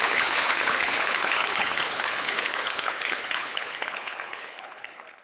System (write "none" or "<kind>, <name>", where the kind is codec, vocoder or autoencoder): codec, HILCodec